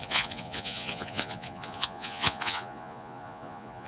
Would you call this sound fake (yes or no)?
yes